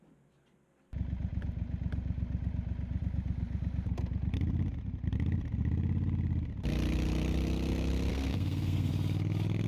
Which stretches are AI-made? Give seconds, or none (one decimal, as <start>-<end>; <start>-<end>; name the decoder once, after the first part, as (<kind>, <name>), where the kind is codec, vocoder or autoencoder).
8.1-8.9 (codec, SNAC)